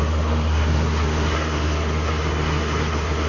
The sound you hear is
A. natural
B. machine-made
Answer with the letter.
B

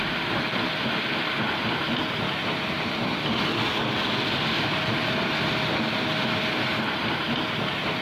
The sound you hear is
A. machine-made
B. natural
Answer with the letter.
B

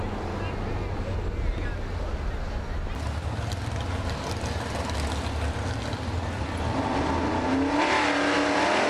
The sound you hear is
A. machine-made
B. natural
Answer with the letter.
B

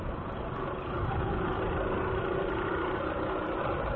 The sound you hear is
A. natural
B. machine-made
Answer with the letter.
A